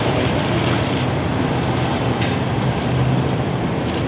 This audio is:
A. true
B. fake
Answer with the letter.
B